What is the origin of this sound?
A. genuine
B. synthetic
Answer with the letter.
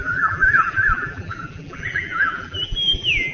B